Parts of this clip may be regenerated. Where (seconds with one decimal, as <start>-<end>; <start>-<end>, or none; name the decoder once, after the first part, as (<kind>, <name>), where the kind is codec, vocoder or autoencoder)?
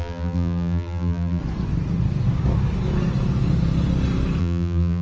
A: 0.0-1.4 (vocoder, BigVGAN v2); 4.4-5.0